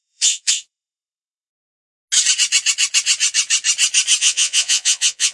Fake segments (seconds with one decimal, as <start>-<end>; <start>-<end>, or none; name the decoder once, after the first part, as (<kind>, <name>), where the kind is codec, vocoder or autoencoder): 0.0-1.5 (vocoder, Vocos); 4.2-5.3